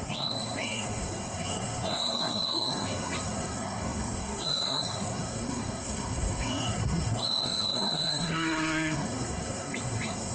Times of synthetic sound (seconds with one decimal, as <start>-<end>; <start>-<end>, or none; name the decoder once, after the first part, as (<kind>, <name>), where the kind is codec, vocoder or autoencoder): 0.0-10.3 (codec, SNAC)